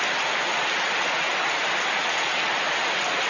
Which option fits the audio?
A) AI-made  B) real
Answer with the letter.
B